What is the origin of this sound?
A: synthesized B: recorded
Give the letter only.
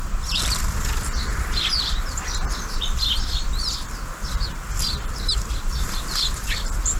A